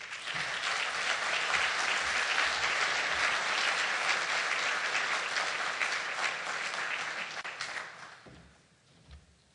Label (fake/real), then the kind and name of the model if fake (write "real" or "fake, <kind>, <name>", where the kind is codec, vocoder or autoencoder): real